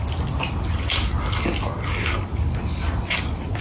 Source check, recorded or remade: recorded